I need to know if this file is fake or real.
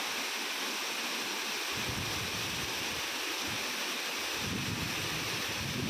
real